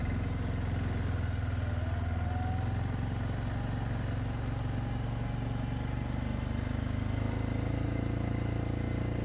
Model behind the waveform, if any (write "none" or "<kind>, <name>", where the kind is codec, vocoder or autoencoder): none